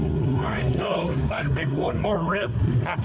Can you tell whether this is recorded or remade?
remade